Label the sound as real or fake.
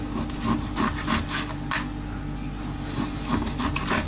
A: real